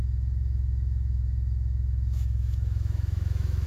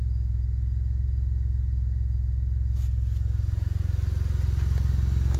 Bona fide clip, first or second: second